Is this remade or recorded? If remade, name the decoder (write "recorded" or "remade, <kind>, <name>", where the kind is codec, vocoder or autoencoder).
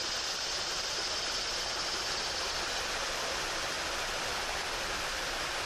recorded